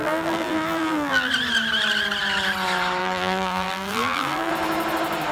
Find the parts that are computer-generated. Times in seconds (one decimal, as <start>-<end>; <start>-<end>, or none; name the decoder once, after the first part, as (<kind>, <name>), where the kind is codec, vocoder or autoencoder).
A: 0.0-1.3 (vocoder, BigVGAN v2); 3.0-4.5